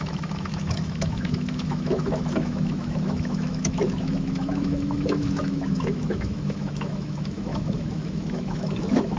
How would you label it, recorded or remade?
remade